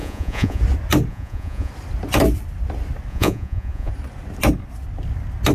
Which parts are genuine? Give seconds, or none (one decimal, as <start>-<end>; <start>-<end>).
0.6-1.1; 1.7-3.1; 3.9-5.5